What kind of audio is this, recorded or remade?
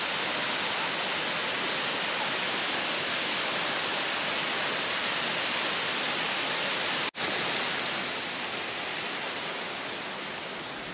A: recorded